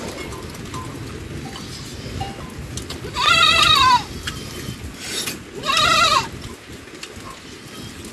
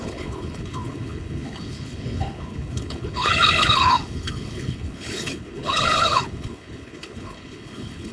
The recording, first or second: first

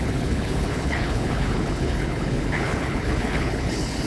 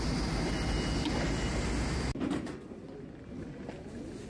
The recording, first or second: second